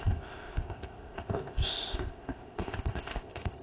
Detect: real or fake fake